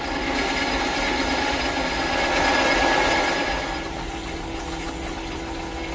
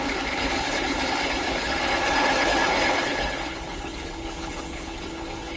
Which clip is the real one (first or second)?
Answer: first